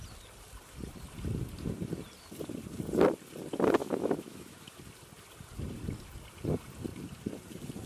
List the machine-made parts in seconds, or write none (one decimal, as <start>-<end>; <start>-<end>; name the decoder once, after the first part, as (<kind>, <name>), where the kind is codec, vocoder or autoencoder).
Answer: 3.8-4.8 (autoencoder, DAC-VAE)